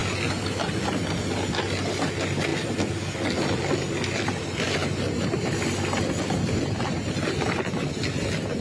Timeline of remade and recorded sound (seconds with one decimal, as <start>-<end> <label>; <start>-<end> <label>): 0.0-8.6 recorded